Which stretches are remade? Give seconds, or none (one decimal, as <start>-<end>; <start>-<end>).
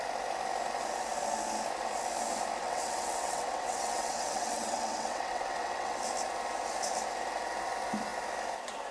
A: 2.6-6.0